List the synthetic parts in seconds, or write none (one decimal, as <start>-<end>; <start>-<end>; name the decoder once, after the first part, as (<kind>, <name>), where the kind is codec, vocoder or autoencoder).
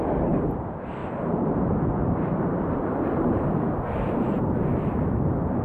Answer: 1.0-4.4 (vocoder, BigVGAN v2)